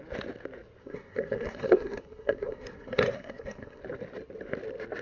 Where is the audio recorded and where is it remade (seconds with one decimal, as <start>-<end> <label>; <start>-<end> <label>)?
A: 0.0-0.8 recorded; 0.8-3.8 remade; 3.8-5.0 recorded